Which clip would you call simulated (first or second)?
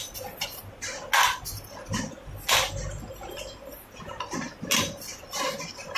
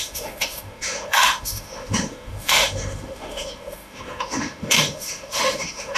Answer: second